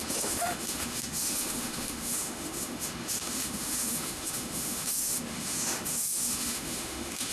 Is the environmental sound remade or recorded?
remade